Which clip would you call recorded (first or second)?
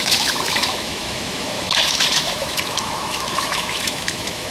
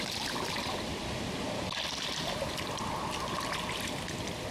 second